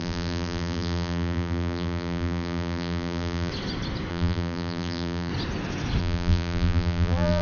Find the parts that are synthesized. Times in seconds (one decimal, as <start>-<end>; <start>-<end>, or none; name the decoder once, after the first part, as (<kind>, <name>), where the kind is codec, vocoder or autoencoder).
0.0-3.5 (vocoder, BigVGAN v2); 4.1-5.3; 6.0-7.4